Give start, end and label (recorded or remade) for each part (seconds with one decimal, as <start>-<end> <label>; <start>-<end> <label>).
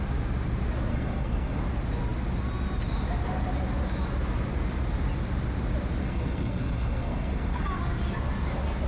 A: 0.0-0.9 recorded; 0.9-1.6 remade; 1.6-6.0 recorded; 6.0-7.8 remade; 7.8-8.9 recorded